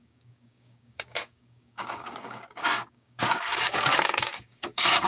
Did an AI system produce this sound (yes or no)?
yes